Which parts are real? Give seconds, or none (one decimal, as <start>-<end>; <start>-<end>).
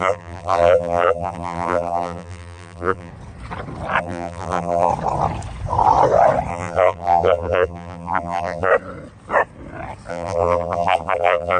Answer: 3.1-4.0; 4.9-6.5; 8.7-10.1